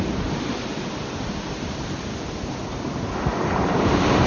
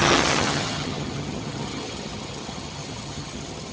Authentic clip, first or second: first